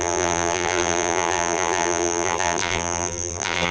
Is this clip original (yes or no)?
no